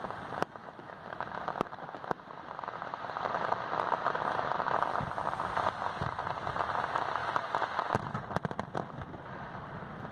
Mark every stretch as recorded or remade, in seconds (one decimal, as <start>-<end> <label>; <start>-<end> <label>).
0.0-0.6 recorded; 0.6-2.4 remade; 2.4-10.1 recorded